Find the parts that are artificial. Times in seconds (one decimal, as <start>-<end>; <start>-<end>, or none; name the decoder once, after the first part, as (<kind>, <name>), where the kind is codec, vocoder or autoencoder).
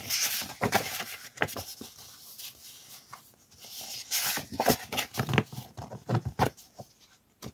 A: 0.0-1.7 (vocoder, BigVGAN v2); 5.9-7.5